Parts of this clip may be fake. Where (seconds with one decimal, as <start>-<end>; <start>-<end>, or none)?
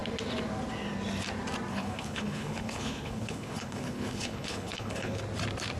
1.7-5.2